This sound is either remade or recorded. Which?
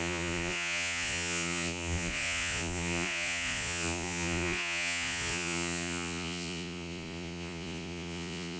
remade